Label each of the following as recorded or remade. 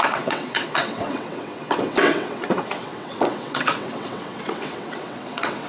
remade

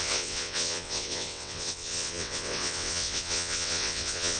remade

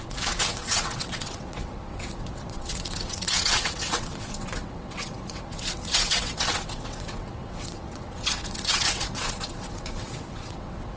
remade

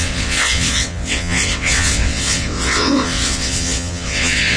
remade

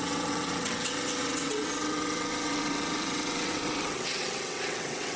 remade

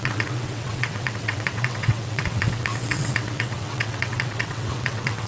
remade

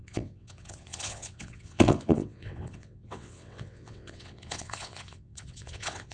remade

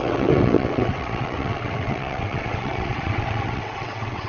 remade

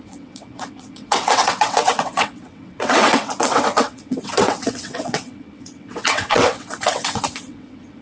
remade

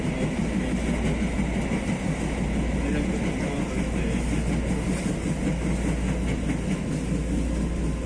recorded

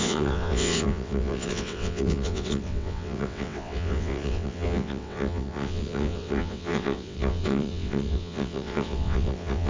remade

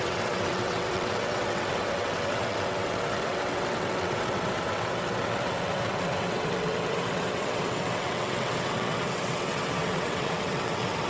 remade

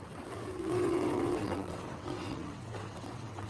remade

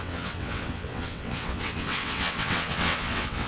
remade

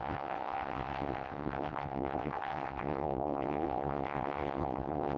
remade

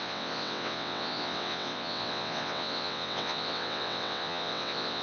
remade